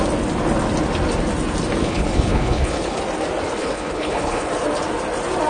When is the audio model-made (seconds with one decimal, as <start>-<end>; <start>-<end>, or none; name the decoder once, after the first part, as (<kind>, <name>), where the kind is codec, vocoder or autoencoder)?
1.8-3.0 (codec, HILCodec); 3.6-4.5